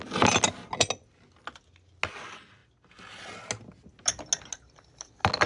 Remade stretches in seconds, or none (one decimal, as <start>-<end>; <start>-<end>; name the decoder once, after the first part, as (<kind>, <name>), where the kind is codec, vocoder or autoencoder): none